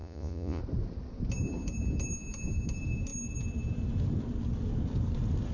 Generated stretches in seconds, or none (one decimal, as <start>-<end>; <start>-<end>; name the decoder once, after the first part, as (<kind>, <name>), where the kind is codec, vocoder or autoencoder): 0.0-0.6 (vocoder, Vocos)